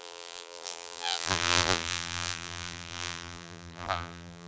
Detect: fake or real fake